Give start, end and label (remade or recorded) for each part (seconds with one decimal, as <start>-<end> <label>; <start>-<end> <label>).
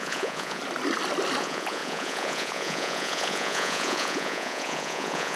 0.0-0.6 remade; 0.6-1.4 recorded; 1.4-5.4 remade